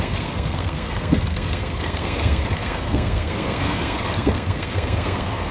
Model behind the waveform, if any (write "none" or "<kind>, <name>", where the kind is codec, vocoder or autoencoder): codec, SNAC